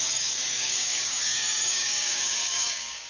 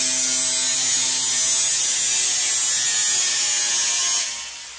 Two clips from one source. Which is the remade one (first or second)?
first